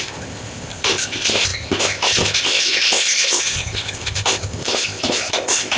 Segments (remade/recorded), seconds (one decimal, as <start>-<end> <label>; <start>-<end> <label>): 0.0-5.8 remade